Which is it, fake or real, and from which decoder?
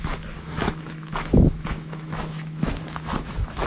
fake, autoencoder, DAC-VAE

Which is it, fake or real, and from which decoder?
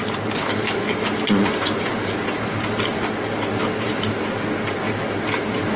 real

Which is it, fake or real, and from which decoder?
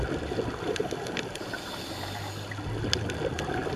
real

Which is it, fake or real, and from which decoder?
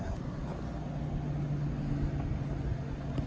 real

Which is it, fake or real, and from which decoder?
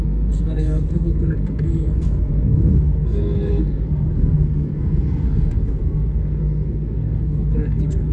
fake, codec, SNAC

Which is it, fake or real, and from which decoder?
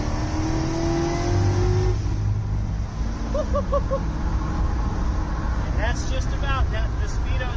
real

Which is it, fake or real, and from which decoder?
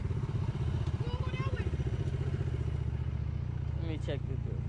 real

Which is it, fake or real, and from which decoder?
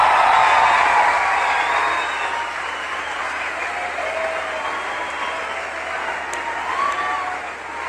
real